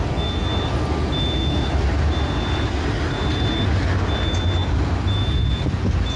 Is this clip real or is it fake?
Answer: real